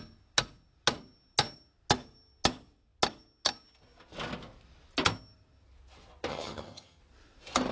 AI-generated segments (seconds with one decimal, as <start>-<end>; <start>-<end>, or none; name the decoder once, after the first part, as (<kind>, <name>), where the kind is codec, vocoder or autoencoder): 6.3-7.0 (vocoder, HiFi-GAN)